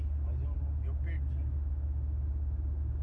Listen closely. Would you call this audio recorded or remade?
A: recorded